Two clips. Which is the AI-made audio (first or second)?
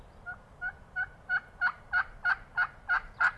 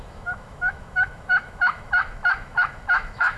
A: second